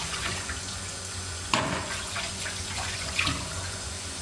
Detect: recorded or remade remade